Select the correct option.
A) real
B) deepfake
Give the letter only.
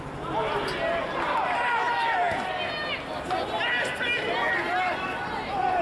A